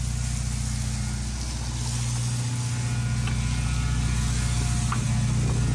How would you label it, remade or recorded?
recorded